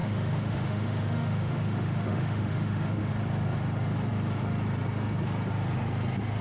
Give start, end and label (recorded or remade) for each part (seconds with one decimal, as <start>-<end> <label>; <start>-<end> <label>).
0.0-3.1 remade; 3.1-6.4 recorded